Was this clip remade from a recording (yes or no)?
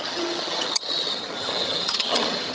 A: yes